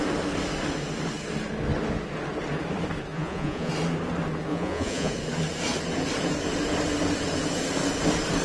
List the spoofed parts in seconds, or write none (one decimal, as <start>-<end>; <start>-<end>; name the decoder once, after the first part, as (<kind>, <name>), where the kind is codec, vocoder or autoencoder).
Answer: 3.1-3.7 (vocoder, Vocos); 4.5-5.1